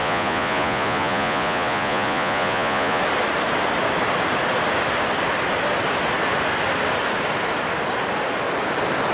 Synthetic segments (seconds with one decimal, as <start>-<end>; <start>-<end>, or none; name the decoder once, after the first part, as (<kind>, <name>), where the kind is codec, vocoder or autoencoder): 0.0-3.0 (vocoder, Vocos)